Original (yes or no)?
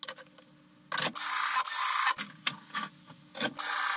yes